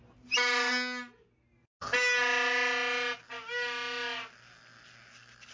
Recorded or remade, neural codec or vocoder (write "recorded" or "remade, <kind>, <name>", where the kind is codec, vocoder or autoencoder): recorded